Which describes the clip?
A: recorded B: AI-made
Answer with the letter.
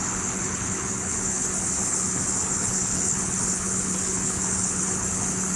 B